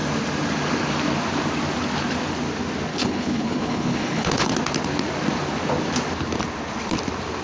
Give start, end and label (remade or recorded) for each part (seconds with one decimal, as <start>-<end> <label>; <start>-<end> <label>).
0.0-2.9 recorded; 2.9-4.5 remade; 4.5-7.4 recorded